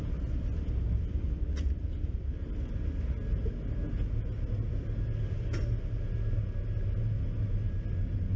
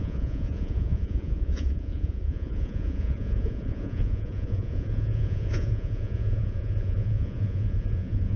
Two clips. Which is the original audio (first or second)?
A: first